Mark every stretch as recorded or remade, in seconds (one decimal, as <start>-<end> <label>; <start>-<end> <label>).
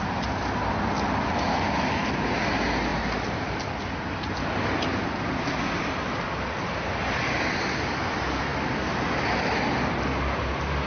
0.0-10.9 recorded